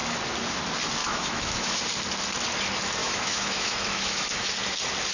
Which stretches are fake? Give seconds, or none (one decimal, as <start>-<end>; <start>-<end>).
1.0-1.8; 3.0-4.5